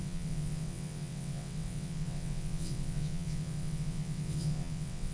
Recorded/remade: remade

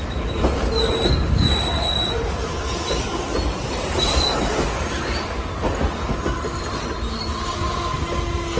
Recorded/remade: recorded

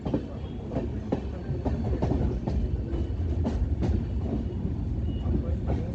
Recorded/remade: recorded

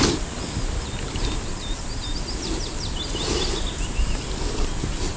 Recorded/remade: recorded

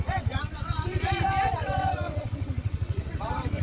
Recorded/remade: remade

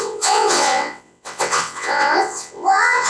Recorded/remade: remade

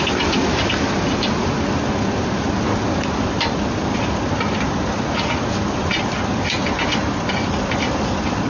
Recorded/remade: recorded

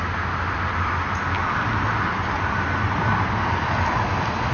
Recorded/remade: recorded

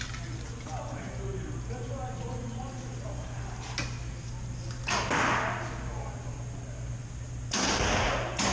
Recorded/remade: recorded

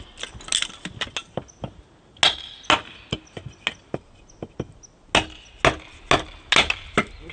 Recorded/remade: recorded